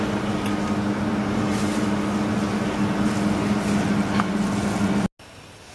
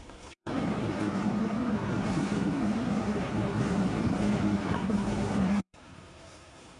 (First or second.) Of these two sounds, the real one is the first